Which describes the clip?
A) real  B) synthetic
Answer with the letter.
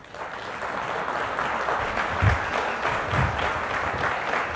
A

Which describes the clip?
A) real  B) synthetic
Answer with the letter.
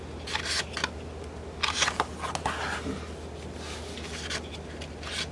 A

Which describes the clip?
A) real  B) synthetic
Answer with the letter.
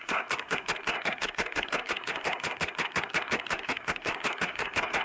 B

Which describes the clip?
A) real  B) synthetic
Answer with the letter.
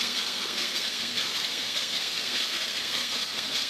B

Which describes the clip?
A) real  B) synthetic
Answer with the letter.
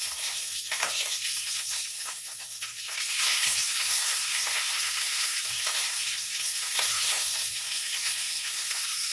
B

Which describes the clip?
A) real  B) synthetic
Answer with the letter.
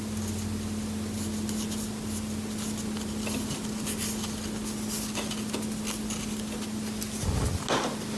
A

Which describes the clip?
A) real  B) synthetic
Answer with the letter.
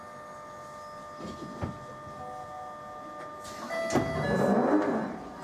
A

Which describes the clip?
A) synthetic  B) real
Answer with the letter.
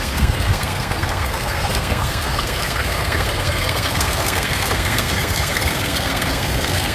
A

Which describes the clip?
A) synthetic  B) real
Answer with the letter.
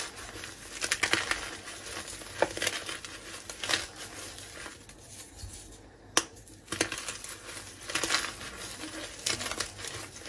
B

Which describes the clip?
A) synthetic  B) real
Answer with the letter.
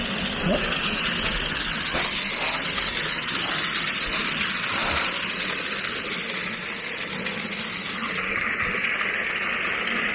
B